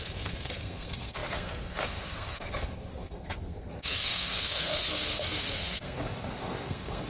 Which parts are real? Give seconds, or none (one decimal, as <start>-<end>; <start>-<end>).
none